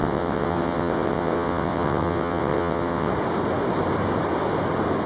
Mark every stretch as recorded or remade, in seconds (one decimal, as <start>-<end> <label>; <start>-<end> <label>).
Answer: 0.0-3.1 remade; 3.1-5.1 recorded